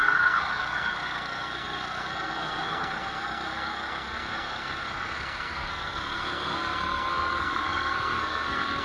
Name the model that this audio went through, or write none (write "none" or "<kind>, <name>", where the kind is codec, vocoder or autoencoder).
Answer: codec, SNAC